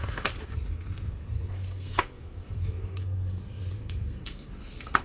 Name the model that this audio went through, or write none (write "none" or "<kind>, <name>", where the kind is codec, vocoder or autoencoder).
codec, SNAC